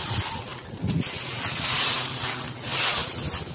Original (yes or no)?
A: yes